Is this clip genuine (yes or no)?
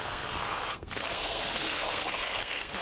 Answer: no